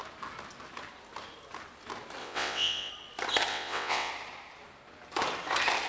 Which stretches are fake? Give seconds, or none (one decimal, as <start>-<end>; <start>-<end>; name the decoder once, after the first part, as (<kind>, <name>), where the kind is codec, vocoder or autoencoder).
2.2-2.9 (vocoder, WaveNeXt); 3.5-4.1